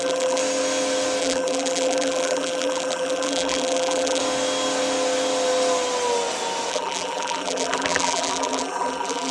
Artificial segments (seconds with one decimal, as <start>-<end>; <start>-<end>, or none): 0.0-0.4; 1.2-4.2; 6.7-9.3